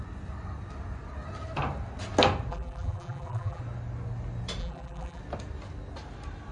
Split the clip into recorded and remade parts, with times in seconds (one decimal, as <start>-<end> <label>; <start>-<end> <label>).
0.0-2.5 recorded; 2.5-3.6 remade; 3.6-4.6 recorded; 4.6-5.2 remade; 5.2-6.5 recorded